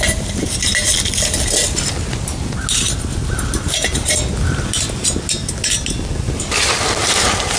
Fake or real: real